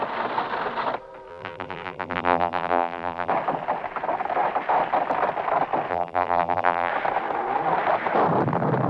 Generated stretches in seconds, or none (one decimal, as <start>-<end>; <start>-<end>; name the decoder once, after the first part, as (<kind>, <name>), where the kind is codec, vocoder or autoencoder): 1.3-3.3 (vocoder, BigVGAN v2); 5.9-6.9